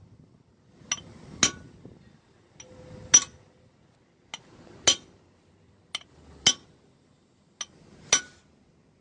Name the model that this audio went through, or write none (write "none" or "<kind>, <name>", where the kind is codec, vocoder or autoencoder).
none